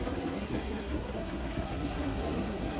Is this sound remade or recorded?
remade